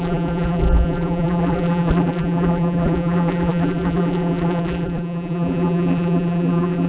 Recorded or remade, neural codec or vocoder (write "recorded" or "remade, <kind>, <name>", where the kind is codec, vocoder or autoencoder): remade, vocoder, BigVGAN v2